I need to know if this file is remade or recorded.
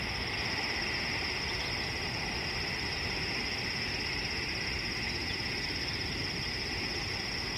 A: recorded